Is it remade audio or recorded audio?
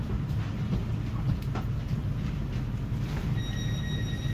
recorded